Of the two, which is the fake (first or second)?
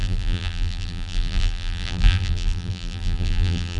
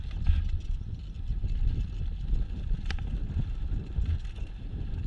first